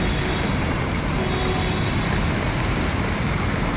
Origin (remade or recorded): recorded